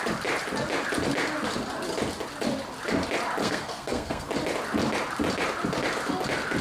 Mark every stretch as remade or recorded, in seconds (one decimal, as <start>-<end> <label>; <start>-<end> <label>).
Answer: 0.0-3.4 recorded; 3.4-4.3 remade; 4.3-6.6 recorded